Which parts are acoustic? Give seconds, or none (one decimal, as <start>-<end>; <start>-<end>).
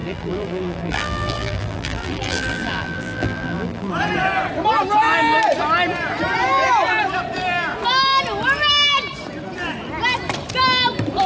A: 3.9-11.3